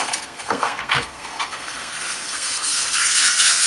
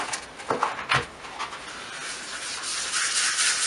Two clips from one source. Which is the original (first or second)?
second